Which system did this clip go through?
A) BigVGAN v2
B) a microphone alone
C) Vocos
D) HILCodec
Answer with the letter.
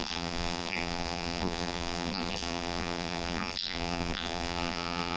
A